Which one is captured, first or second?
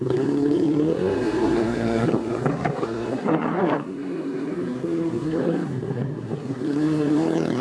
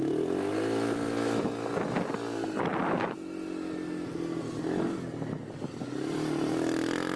second